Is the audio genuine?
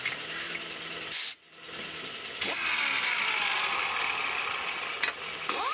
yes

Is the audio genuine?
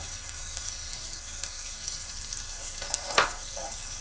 no